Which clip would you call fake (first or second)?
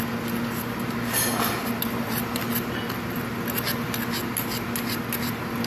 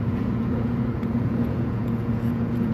second